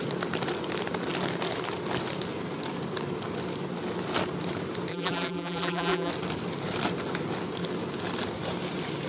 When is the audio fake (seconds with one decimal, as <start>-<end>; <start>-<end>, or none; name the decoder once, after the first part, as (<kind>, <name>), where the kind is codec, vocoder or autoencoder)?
4.9-6.1 (vocoder, BigVGAN v2)